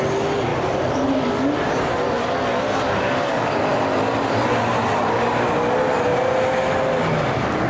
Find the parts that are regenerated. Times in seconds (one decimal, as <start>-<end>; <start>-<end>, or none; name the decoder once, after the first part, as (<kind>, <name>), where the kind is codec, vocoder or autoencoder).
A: none